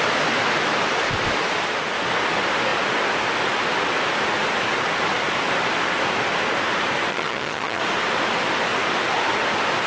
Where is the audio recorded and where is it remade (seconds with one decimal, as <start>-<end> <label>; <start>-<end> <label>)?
0.0-7.1 recorded; 7.1-7.8 remade; 7.8-9.9 recorded